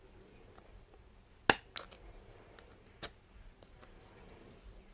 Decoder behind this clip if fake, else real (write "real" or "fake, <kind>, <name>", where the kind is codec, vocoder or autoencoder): real